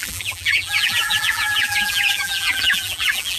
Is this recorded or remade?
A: remade